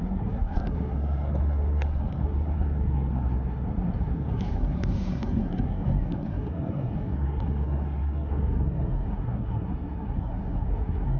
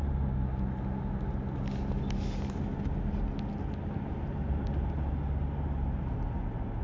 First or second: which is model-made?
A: first